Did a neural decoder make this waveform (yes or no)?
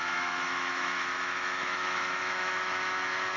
yes